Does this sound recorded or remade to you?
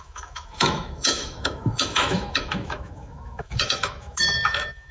remade